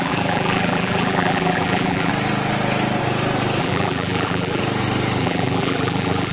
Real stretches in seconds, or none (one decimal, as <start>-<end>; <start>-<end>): 2.1-3.6; 4.6-5.2